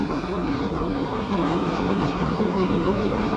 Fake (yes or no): yes